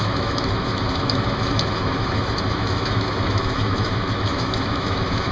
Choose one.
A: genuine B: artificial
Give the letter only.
B